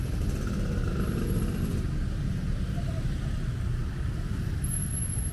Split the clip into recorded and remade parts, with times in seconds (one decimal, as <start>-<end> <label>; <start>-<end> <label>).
0.0-5.3 recorded